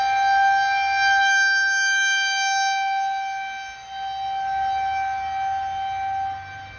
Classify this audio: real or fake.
real